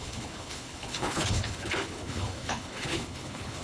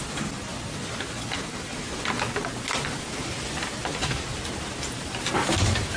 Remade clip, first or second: first